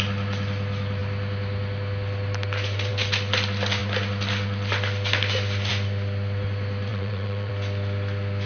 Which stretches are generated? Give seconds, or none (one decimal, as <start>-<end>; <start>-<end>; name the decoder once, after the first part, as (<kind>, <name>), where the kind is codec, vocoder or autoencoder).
6.9-7.5 (vocoder, Vocos)